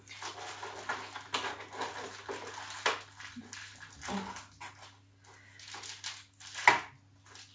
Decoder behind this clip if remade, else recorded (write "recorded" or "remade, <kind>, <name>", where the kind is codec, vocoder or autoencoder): recorded